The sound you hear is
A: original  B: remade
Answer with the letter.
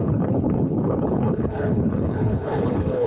B